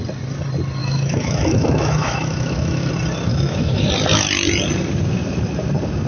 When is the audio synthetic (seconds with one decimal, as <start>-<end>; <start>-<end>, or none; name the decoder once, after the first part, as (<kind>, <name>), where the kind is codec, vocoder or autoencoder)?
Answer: 0.8-2.9 (autoencoder, DAC-VAE); 3.3-3.9